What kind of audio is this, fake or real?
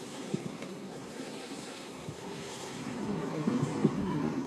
fake